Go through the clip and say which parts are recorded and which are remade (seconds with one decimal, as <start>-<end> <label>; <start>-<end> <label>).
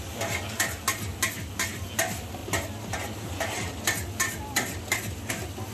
0.0-5.7 recorded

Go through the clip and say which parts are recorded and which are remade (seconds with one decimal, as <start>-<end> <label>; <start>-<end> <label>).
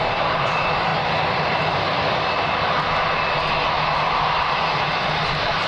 0.0-0.9 remade; 0.9-4.3 recorded; 4.3-5.7 remade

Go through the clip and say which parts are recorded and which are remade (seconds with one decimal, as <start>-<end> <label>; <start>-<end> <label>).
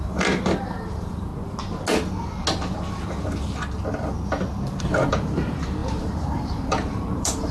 0.0-1.3 remade; 1.3-4.8 recorded; 4.8-7.5 remade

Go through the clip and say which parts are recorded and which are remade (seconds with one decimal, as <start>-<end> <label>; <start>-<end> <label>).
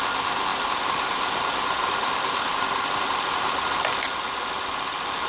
0.0-0.5 recorded; 0.5-1.9 remade; 1.9-5.3 recorded